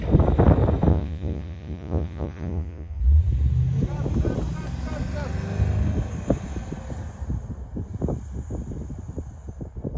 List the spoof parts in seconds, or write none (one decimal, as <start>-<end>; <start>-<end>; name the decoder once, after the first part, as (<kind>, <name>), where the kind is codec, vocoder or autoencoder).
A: 0.9-3.0 (vocoder, Vocos)